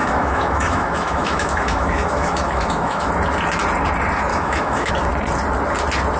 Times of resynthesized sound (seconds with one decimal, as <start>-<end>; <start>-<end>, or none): 0.0-3.1; 4.3-4.9